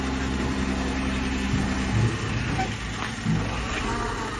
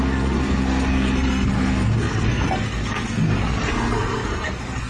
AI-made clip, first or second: second